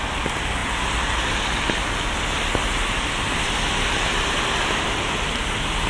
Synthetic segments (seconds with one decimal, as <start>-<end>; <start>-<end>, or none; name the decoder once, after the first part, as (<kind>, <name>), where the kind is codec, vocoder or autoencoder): none